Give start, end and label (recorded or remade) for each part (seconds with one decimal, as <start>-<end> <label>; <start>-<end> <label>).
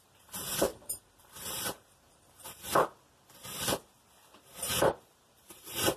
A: 0.0-2.7 remade; 2.7-4.6 recorded; 4.6-6.0 remade